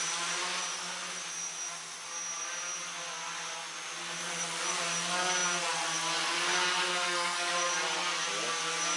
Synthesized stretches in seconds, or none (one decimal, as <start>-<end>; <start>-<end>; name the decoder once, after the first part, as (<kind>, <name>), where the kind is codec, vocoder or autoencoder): 6.9-7.5 (codec, SNAC)